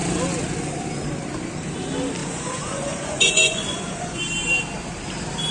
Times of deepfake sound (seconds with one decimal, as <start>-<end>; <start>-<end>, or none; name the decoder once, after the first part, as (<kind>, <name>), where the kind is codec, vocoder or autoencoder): 2.2-4.2 (vocoder, Vocos)